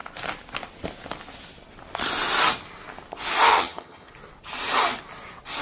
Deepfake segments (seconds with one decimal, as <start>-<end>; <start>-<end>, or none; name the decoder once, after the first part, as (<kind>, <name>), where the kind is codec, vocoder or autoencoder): 3.5-4.1 (vocoder, HiFi-GAN)